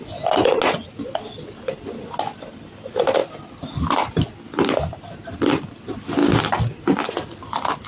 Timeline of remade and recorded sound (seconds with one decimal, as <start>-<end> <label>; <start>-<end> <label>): 0.0-7.9 recorded